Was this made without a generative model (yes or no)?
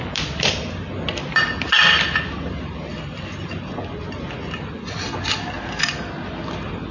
yes